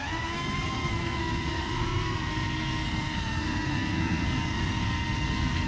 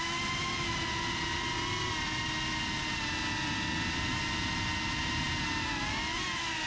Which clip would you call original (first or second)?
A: second